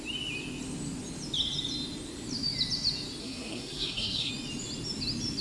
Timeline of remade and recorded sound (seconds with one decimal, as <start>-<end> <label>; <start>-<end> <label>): 0.0-3.2 recorded; 3.2-4.3 remade; 4.3-5.4 recorded

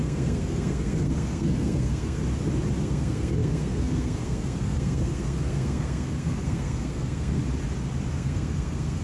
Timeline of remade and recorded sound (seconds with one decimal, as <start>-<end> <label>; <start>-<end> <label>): 0.0-2.2 remade; 2.2-2.8 recorded; 2.8-7.4 remade; 7.4-8.1 recorded; 8.1-9.0 remade

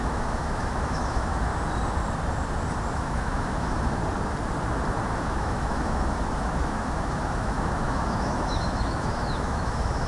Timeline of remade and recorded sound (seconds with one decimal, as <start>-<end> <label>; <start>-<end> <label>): 0.0-1.5 remade; 1.5-2.9 recorded; 2.9-4.0 remade; 4.0-5.2 recorded; 5.2-10.1 remade

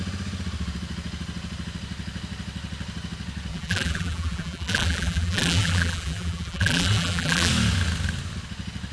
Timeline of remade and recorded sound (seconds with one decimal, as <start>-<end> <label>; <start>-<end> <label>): 0.0-3.5 recorded; 3.5-7.5 remade; 7.5-8.9 recorded

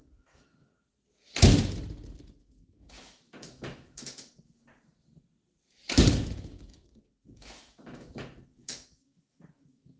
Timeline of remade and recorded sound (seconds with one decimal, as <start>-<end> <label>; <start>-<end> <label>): 0.0-0.7 remade; 0.7-2.4 recorded; 2.4-4.7 remade; 4.7-6.1 recorded; 6.1-10.0 remade